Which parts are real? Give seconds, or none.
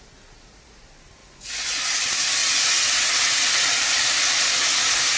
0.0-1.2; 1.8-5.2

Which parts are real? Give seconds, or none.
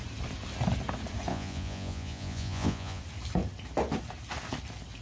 0.0-1.3; 3.0-5.0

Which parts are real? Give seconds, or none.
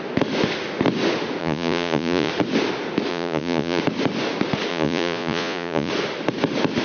0.0-1.4; 2.3-3.1; 3.8-4.7; 5.9-6.8